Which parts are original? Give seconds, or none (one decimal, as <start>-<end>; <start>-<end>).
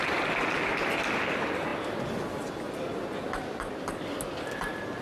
0.0-5.0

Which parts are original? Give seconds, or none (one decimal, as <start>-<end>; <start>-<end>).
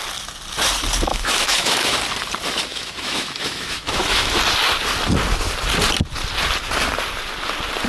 0.0-1.1; 1.9-2.7; 4.4-7.9